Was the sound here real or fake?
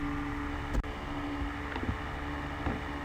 real